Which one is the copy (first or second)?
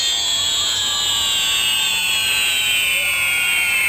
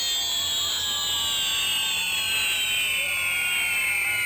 first